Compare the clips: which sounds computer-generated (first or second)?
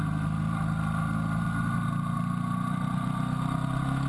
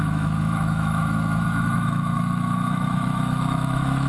second